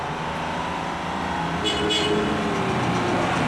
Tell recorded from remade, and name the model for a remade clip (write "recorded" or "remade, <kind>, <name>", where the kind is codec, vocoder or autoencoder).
recorded